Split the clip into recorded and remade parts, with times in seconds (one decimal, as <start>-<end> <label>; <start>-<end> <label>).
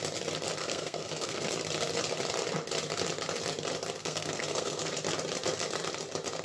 0.0-0.6 recorded; 0.6-1.5 remade; 1.5-4.0 recorded; 4.0-4.9 remade; 4.9-6.4 recorded